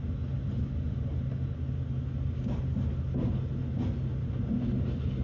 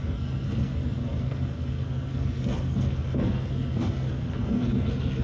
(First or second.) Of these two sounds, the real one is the first